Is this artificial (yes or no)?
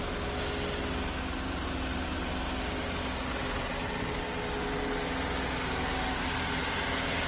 no